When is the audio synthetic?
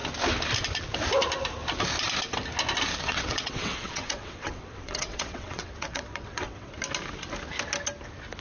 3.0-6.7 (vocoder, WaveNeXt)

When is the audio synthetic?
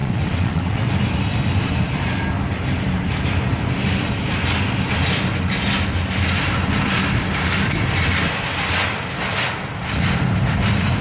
0.0-0.9 (vocoder, WaveNeXt)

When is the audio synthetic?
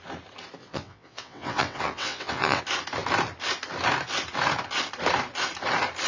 0.6-2.6 (vocoder, WaveNeXt)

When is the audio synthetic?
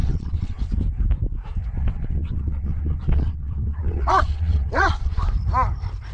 0.0-0.6 (vocoder, WaveNeXt); 1.8-5.2